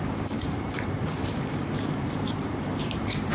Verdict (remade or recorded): remade